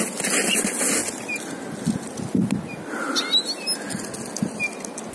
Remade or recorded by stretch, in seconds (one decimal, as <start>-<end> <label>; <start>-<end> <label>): 0.0-5.1 recorded